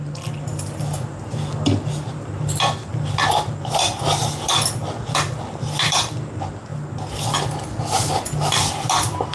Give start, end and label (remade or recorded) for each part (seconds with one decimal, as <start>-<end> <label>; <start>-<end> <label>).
0.0-9.3 recorded